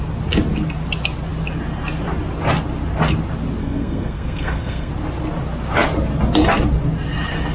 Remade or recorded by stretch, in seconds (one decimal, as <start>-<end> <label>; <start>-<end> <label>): 0.0-3.6 recorded; 3.6-4.9 remade; 4.9-7.5 recorded